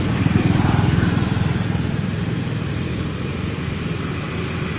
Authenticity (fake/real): fake